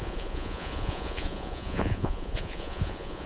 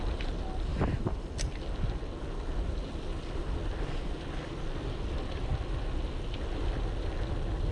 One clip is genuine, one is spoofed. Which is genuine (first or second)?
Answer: second